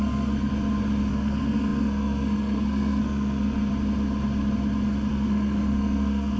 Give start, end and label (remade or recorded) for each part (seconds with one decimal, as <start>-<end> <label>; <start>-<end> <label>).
0.0-0.5 remade; 0.5-1.1 recorded; 1.1-3.7 remade; 3.7-5.1 recorded; 5.1-6.4 remade